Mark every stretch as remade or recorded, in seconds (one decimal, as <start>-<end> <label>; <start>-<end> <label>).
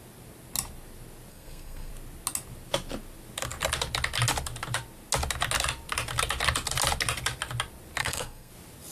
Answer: 0.0-1.3 recorded; 1.3-1.9 remade; 1.9-8.0 recorded; 8.0-8.5 remade; 8.5-8.9 recorded